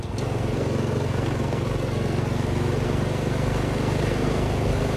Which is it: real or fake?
fake